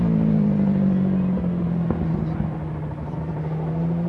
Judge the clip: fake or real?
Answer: real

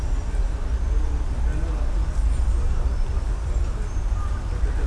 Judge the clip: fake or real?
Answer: real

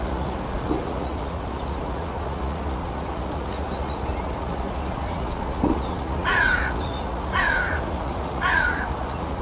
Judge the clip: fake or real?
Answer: fake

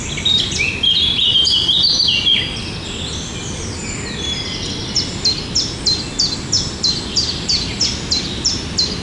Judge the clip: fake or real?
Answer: real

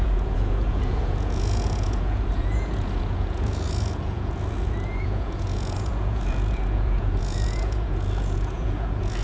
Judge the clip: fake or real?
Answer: fake